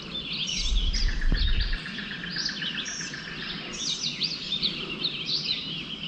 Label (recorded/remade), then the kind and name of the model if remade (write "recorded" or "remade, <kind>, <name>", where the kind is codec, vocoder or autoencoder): recorded